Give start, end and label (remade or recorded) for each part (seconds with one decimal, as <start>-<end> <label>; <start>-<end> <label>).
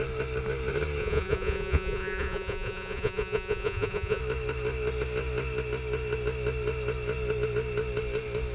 0.0-1.0 recorded; 1.0-4.2 remade; 4.2-8.5 recorded